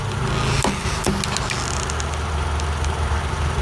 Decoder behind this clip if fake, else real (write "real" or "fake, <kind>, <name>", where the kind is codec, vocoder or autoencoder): real